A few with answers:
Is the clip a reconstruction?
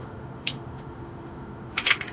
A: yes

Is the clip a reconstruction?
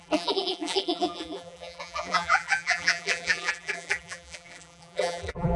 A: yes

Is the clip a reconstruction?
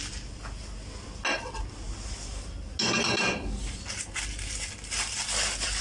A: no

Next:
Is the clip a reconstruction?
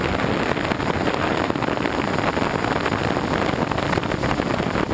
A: no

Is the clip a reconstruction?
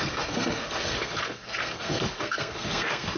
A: yes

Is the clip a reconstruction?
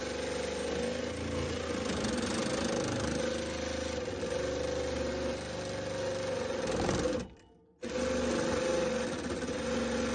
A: no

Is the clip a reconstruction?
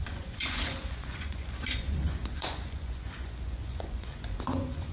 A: yes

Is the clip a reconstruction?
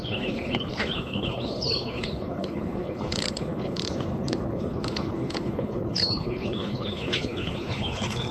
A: yes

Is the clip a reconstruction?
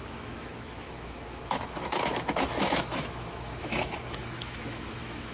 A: yes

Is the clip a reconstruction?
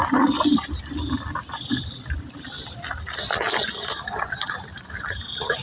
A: no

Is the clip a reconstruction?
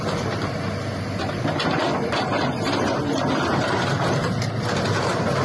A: yes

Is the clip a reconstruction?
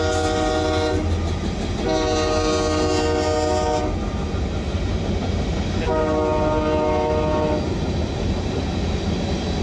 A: no